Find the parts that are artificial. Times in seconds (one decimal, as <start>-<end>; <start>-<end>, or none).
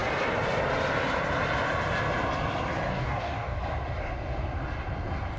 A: 2.9-3.6